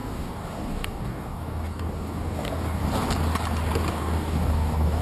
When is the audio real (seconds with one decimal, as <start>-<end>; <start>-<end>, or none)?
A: 2.8-3.9